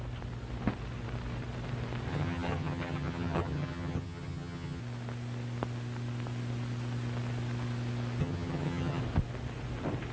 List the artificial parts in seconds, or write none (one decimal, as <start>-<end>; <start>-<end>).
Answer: 2.1-4.8; 8.2-9.0